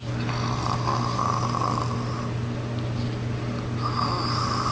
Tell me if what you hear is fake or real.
real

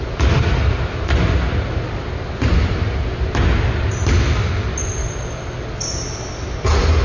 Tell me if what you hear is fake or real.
real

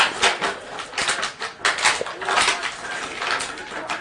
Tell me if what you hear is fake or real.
real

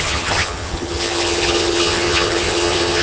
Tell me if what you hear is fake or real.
fake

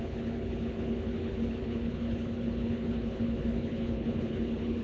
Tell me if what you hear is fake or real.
fake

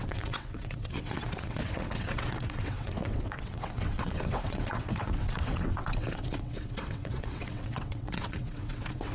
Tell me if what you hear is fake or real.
fake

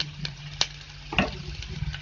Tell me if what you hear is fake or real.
real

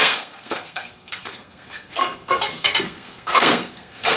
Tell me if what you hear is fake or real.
fake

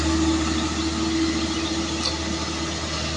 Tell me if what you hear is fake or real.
real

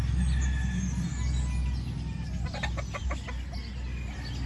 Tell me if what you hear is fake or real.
real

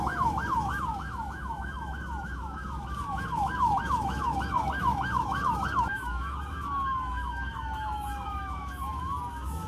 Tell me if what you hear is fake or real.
fake